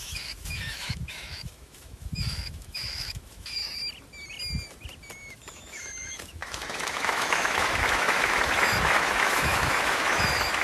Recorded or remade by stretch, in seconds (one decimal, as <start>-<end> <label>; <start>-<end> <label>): 0.0-3.6 remade; 3.6-5.3 recorded; 5.3-10.6 remade